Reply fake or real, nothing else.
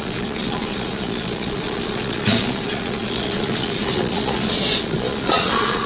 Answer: fake